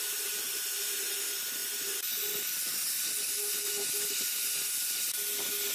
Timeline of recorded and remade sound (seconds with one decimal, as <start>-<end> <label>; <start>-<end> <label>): 0.0-5.7 recorded